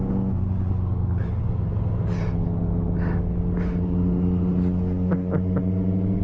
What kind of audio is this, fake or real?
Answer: real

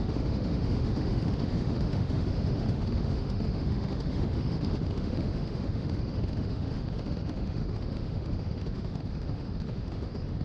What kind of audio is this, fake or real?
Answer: fake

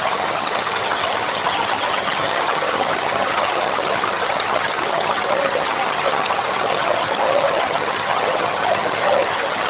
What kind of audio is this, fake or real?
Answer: fake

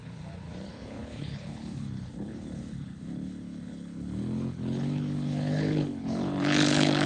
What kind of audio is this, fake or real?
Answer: fake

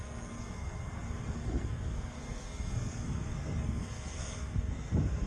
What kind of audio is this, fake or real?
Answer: fake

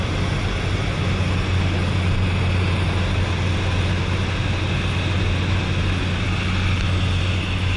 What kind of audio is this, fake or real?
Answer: real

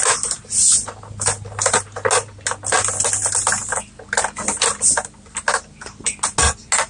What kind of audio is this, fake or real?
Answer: real